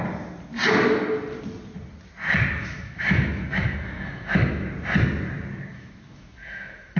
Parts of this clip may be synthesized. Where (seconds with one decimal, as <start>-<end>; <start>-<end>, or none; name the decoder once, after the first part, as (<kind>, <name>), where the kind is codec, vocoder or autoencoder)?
2.6-4.7 (autoencoder, DAC-VAE); 5.7-7.0